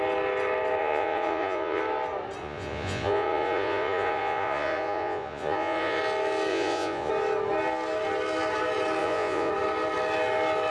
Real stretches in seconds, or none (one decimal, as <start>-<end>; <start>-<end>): 0.0-0.8; 1.8-2.4; 6.0-6.5; 7.1-9.0; 9.5-10.7